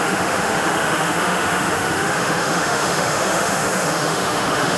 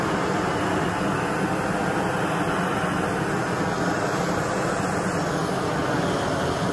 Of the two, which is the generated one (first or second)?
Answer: first